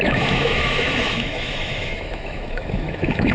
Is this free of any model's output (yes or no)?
no